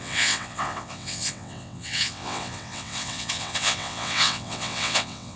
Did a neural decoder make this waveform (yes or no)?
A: yes